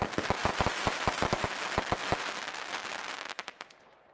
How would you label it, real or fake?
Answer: real